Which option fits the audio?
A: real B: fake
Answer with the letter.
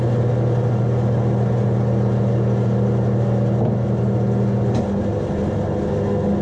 A